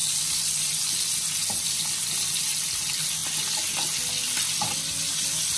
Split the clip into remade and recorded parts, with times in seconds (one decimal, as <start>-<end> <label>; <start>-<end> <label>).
0.0-5.6 recorded